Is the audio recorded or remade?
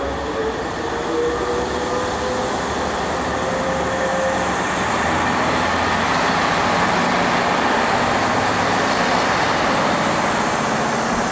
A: recorded